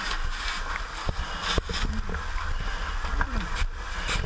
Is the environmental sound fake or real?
real